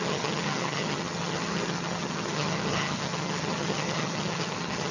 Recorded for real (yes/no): no